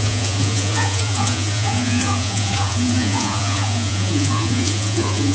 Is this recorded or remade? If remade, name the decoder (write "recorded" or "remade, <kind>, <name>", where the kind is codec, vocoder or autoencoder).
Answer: remade, vocoder, Vocos